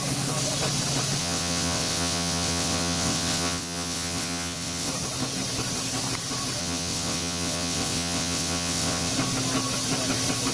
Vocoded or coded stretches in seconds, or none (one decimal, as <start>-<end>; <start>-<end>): 1.2-4.9; 6.6-9.1